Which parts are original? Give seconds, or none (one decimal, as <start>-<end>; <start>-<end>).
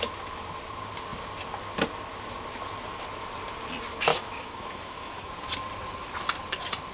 0.0-4.1; 5.3-6.9